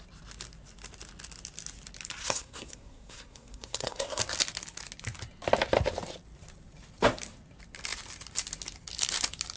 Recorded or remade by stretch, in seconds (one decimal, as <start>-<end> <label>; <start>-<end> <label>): 0.0-2.2 recorded; 2.2-4.2 remade; 4.2-9.6 recorded

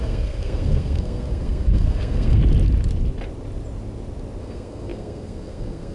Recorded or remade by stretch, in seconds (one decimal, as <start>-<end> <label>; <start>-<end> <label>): 0.0-2.4 remade; 2.4-4.4 recorded; 4.4-5.9 remade

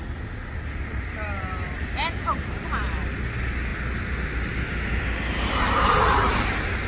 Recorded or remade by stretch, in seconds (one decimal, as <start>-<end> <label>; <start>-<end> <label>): 0.0-6.9 recorded

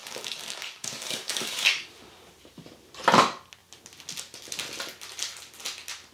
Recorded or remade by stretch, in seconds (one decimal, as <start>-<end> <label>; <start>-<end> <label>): 0.0-1.9 remade; 1.9-6.1 recorded

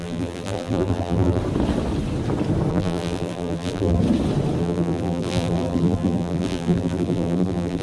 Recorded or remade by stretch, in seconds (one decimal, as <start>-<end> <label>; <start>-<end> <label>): 0.0-1.4 remade; 1.4-2.7 recorded; 2.7-4.0 remade; 4.0-4.6 recorded; 4.6-7.8 remade

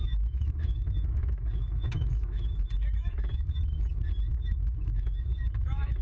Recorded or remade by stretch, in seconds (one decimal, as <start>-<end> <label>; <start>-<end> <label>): 0.0-3.6 remade; 3.6-4.3 recorded; 4.3-6.0 remade

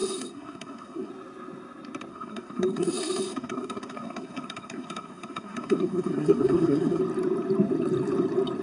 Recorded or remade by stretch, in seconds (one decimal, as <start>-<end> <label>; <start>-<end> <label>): 0.0-1.1 remade; 1.1-2.1 recorded; 2.1-7.0 remade; 7.0-8.6 recorded

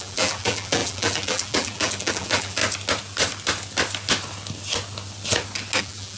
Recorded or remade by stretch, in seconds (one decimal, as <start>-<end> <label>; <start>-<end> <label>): 0.0-2.6 remade; 2.6-5.8 recorded; 5.8-6.2 remade